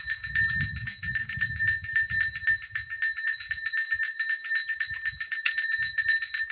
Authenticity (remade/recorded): remade